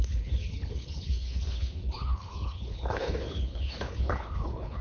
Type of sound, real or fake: fake